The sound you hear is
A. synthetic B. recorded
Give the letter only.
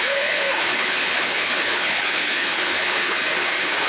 A